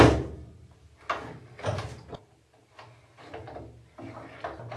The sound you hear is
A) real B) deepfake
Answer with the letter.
A